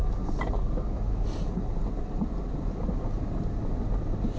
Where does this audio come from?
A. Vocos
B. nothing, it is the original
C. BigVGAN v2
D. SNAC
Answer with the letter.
B